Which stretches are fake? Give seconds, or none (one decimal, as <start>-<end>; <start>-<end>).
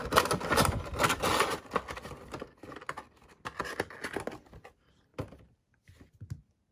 none